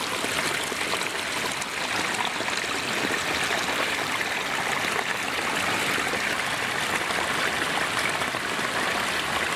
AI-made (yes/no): no